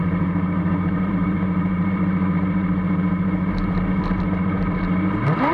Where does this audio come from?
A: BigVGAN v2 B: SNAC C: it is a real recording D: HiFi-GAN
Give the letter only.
A